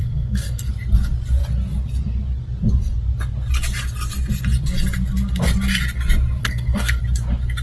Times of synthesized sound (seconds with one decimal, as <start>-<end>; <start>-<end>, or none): 0.0-0.7; 6.4-7.0